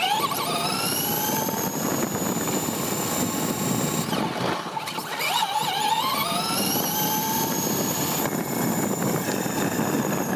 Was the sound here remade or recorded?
recorded